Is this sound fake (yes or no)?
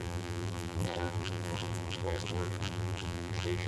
yes